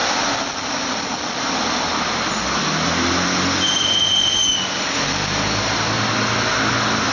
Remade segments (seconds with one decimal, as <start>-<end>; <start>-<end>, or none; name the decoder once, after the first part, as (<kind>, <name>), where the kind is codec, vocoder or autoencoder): none